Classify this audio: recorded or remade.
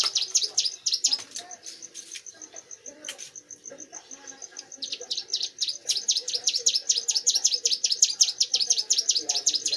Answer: remade